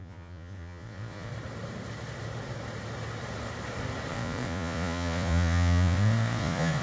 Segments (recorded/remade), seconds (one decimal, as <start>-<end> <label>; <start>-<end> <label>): 0.0-1.3 remade; 1.3-4.1 recorded; 4.1-6.8 remade